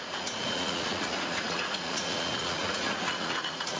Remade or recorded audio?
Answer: remade